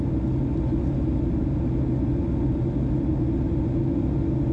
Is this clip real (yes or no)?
yes